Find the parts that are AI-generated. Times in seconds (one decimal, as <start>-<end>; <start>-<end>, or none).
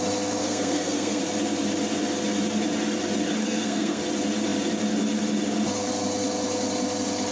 0.4-1.2; 3.4-4.0